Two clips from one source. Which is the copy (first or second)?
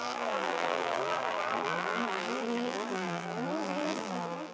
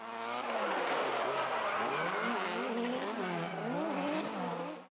first